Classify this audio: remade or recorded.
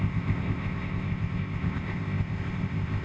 remade